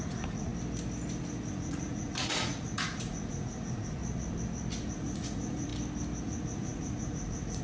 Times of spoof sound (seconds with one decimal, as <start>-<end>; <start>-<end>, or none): 0.0-0.5; 1.5-4.0; 4.9-5.7; 6.2-7.6